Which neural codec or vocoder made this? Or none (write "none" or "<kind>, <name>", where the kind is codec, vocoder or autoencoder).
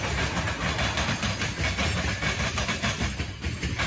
none